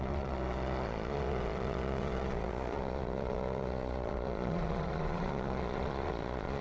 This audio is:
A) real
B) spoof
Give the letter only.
B